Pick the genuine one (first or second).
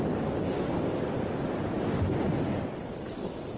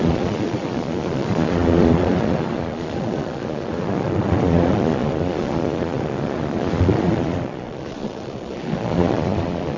first